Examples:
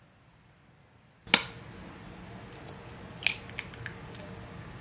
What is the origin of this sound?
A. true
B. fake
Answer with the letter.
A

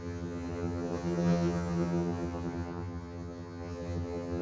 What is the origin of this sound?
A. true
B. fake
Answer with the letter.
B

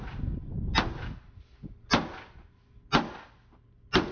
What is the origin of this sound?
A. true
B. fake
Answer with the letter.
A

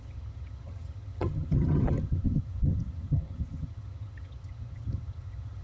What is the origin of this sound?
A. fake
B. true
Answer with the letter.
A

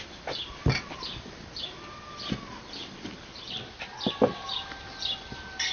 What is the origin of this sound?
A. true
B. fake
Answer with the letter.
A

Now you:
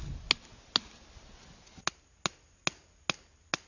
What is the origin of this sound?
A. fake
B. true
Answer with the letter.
B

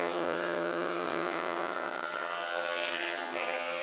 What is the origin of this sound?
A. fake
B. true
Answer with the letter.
A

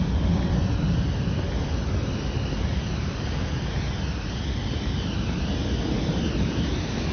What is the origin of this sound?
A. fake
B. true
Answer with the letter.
B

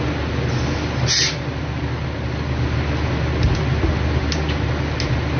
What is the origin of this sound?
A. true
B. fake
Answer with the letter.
A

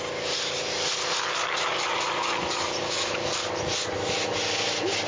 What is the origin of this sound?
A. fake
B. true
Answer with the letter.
B